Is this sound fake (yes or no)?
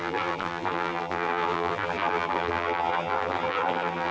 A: yes